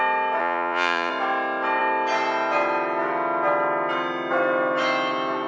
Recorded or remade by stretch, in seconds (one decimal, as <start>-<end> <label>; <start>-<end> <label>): 0.0-0.4 recorded; 0.4-1.1 remade; 1.1-5.5 recorded